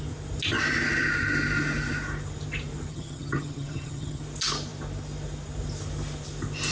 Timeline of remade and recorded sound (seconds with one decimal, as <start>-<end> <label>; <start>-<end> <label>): 0.0-2.9 recorded; 2.9-4.2 remade; 4.2-6.7 recorded

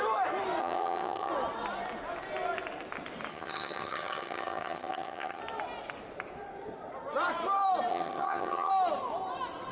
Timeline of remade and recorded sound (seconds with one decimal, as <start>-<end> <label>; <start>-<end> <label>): 0.0-0.6 recorded; 0.6-1.3 remade; 1.3-3.3 recorded; 3.3-5.4 remade; 5.4-7.9 recorded; 7.9-8.7 remade; 8.7-9.7 recorded

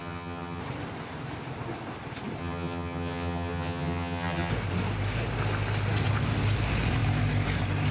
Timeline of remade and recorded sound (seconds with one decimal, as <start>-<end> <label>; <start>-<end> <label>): 0.0-0.6 remade; 0.6-2.4 recorded; 2.4-4.5 remade; 4.5-7.9 recorded

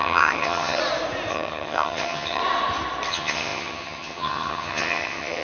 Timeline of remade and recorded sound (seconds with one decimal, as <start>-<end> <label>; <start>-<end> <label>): 0.0-0.8 remade; 0.8-1.3 recorded; 1.3-2.4 remade; 2.4-3.1 recorded; 3.1-5.4 remade

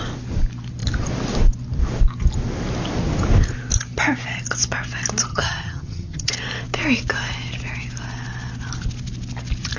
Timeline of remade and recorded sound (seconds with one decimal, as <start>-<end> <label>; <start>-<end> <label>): 0.0-5.3 recorded; 5.3-6.3 remade; 6.3-9.8 recorded

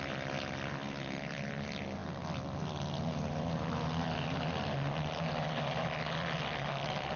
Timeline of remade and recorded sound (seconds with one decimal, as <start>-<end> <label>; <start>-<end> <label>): 0.0-7.2 recorded

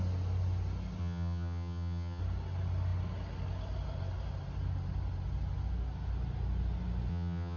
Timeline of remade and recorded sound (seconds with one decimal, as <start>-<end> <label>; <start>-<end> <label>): 0.0-1.0 recorded; 1.0-2.2 remade; 2.2-7.1 recorded; 7.1-7.6 remade